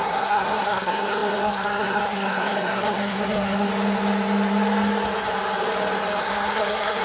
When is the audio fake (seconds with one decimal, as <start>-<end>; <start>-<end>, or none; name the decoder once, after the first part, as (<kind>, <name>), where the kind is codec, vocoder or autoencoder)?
0.0-3.7 (codec, SNAC); 6.2-7.0